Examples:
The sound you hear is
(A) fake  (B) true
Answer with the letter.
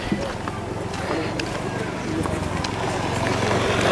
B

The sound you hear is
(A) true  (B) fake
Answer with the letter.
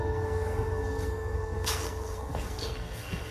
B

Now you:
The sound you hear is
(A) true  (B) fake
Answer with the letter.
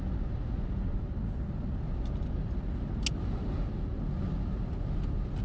A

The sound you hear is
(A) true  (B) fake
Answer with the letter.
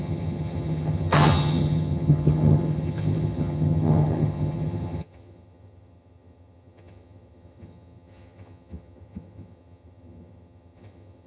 B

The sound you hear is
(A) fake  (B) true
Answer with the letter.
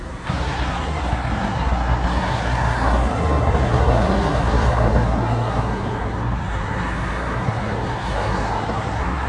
A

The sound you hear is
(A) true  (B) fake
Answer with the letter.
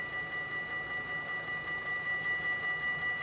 A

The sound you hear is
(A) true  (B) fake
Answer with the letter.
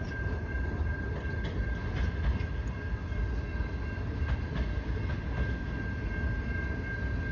A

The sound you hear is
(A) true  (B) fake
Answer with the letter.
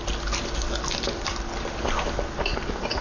A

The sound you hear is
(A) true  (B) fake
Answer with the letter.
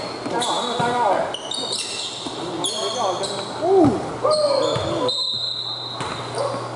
A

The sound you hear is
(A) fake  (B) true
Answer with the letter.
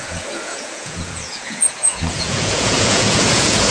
A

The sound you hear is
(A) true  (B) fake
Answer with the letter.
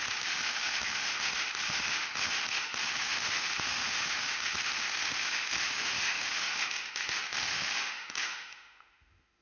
B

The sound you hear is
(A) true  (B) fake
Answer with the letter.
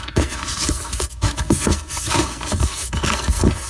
B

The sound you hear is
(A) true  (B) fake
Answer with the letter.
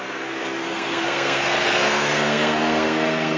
B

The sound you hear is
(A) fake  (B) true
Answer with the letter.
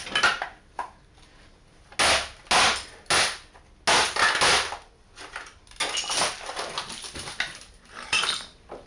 B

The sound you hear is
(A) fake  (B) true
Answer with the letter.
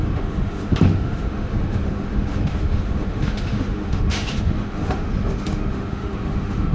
A